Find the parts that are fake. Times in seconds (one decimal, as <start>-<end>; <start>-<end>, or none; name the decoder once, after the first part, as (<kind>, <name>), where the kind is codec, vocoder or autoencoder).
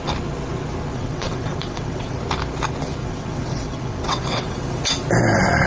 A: 0.9-2.2 (vocoder, WaveNeXt); 3.0-4.8